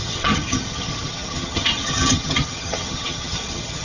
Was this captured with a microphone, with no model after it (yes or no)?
no